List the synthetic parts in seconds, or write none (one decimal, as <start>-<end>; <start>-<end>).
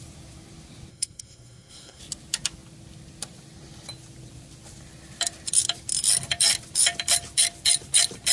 0.9-2.0